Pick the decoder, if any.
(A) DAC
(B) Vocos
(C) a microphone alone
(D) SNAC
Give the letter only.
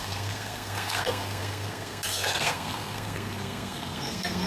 D